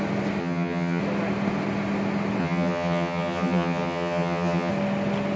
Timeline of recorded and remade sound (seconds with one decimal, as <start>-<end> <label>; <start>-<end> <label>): 0.0-0.4 recorded; 0.4-1.0 remade; 1.0-2.4 recorded; 2.4-4.7 remade; 4.7-5.4 recorded